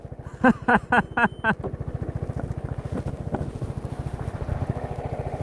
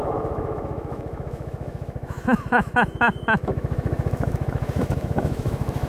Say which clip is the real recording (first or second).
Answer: first